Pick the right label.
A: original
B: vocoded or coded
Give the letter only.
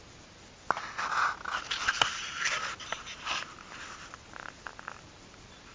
A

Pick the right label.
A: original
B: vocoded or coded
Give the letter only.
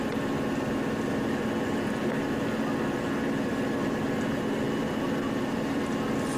A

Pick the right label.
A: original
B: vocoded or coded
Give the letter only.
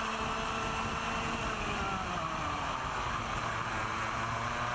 A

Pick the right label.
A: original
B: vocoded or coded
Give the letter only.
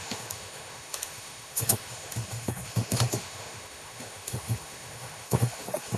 B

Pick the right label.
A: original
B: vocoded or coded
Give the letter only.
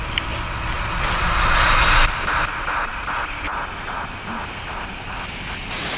A